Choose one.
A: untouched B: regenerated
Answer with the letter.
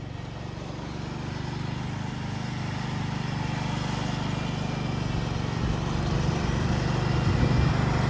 A